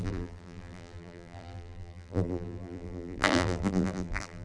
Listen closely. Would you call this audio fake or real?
fake